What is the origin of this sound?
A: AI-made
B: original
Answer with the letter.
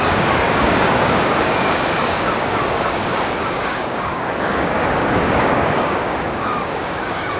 A